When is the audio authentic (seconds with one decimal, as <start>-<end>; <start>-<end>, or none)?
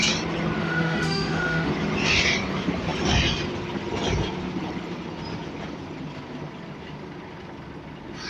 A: 0.0-0.6; 1.7-8.3